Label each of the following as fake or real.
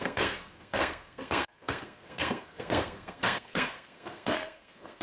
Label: fake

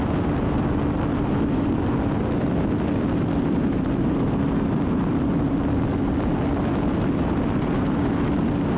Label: real